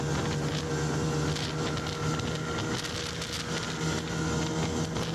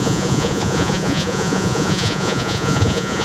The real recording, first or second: first